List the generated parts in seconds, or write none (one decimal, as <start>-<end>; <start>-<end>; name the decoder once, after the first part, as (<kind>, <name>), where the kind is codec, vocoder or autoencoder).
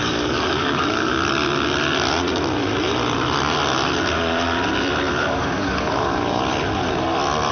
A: 0.0-1.1 (codec, DAC); 5.1-6.5